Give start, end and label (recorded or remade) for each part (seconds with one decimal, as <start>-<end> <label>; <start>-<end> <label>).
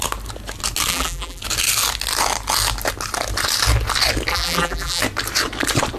0.0-0.9 recorded; 0.9-1.4 remade; 1.4-4.3 recorded; 4.3-5.0 remade; 5.0-6.0 recorded